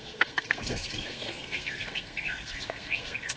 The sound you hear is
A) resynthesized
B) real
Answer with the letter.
A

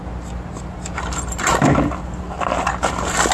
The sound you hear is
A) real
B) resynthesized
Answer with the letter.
A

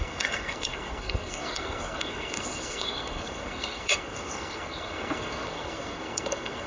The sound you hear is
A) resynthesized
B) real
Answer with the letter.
A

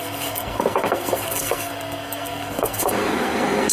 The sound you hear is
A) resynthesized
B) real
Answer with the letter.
A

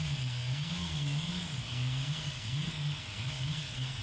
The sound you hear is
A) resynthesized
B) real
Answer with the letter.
A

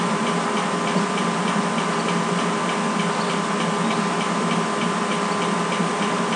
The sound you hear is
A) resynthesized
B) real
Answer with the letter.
B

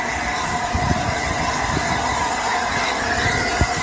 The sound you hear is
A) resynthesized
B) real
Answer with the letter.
B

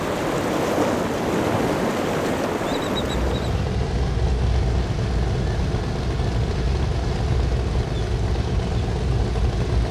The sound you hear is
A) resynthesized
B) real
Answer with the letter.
B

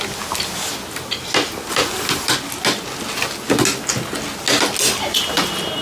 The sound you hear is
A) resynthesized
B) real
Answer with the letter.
B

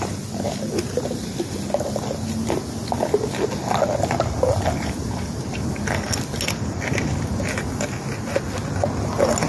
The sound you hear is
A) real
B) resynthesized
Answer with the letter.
A